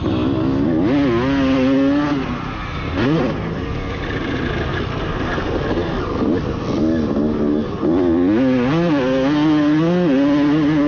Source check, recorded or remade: recorded